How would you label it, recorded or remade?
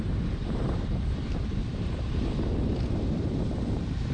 remade